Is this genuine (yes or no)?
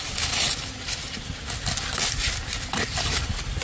yes